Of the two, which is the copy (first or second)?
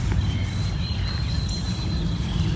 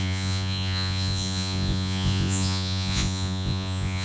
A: second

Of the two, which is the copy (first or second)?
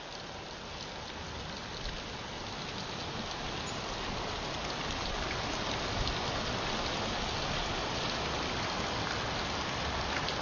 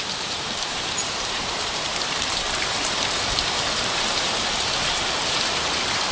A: second